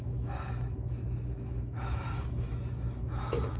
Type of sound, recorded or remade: remade